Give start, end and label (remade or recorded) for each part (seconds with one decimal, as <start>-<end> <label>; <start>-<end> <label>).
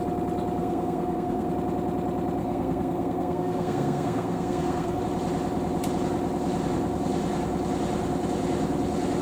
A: 0.0-0.6 recorded; 0.6-1.5 remade; 1.5-2.4 recorded; 2.4-5.0 remade; 5.0-9.2 recorded